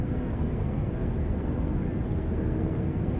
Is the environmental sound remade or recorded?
remade